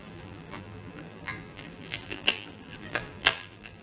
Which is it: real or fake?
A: fake